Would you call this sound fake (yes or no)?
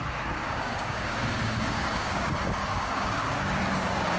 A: yes